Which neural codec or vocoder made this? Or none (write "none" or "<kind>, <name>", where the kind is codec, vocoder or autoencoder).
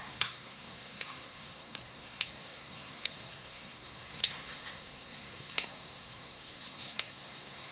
codec, SNAC